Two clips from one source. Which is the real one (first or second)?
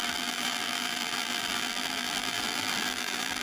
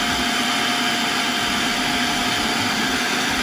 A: second